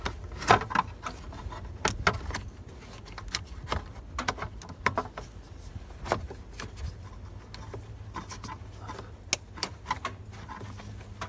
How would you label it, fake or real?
real